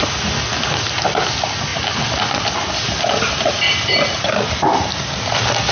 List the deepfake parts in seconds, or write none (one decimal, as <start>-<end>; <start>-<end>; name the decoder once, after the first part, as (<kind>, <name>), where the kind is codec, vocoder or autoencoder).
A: none